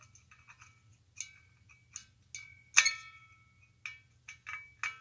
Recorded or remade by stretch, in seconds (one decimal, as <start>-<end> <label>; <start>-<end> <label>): 0.0-5.0 recorded